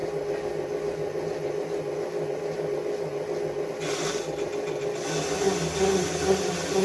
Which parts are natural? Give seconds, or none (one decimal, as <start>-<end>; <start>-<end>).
0.0-6.8